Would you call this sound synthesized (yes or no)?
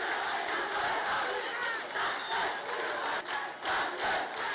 no